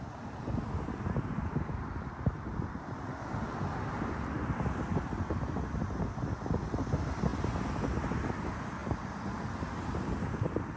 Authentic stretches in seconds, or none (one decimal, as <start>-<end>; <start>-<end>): 0.0-10.8